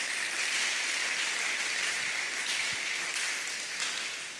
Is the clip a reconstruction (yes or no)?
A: no